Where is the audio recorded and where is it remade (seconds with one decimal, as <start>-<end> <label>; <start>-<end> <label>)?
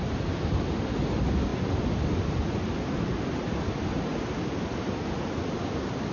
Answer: 0.0-6.1 recorded